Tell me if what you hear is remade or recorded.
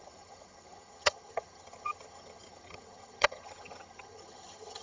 remade